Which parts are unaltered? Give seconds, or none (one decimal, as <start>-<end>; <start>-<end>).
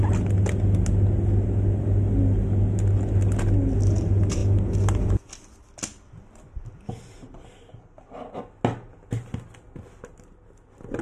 0.0-11.0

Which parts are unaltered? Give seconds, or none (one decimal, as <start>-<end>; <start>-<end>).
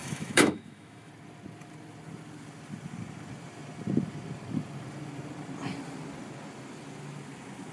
1.1-7.7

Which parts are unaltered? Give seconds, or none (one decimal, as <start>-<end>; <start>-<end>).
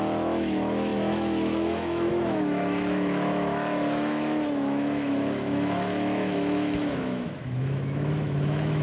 none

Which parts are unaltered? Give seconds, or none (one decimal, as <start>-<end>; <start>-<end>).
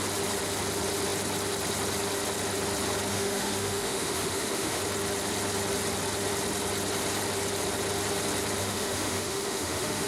0.0-3.1; 4.8-8.6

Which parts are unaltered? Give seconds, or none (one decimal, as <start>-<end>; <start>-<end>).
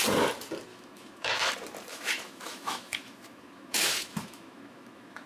0.0-0.7; 1.5-1.9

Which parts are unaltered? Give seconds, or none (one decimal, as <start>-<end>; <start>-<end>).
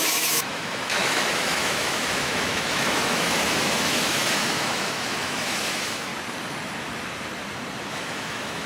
6.1-7.9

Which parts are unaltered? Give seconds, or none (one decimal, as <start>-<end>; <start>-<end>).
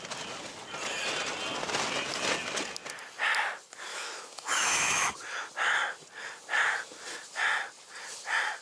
0.0-3.9; 5.1-8.6